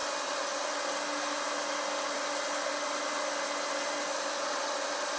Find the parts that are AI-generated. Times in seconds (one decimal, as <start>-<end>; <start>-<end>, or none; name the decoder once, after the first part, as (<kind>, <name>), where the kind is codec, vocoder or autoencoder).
none